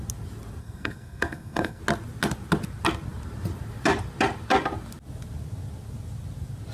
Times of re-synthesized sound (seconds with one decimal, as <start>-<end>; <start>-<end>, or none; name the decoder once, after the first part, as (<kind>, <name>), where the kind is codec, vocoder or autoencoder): 0.6-1.8 (codec, SNAC)